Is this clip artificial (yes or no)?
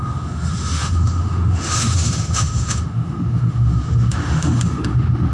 yes